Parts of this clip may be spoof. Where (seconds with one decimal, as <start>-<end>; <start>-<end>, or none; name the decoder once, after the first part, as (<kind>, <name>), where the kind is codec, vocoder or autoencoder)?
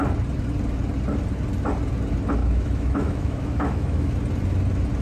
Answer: 2.4-4.1 (autoencoder, DAC-VAE)